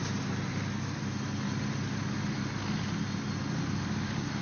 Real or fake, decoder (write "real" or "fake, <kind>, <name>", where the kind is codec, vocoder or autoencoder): real